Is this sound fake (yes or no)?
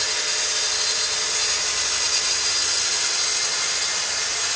no